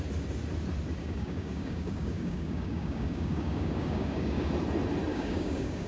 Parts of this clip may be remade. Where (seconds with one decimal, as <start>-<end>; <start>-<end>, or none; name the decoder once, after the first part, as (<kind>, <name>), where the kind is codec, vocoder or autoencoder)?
1.0-4.5 (codec, DAC); 5.1-5.9